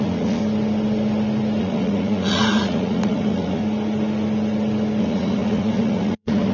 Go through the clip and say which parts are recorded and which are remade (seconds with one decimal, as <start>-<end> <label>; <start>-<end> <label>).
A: 0.0-0.4 remade; 0.4-1.6 recorded; 1.6-3.6 remade; 3.6-5.0 recorded; 5.0-6.5 remade